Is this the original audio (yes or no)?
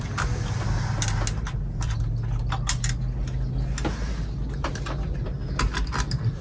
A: yes